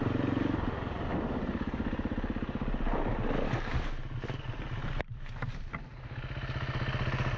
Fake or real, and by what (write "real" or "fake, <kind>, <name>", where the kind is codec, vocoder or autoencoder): real